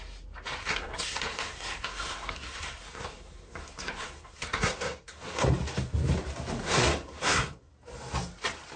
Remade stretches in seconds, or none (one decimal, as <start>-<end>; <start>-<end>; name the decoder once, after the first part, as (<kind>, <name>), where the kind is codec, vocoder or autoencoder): 0.6-5.5 (codec, SNAC); 6.6-7.7